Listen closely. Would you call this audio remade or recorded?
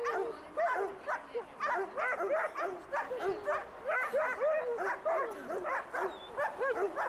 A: recorded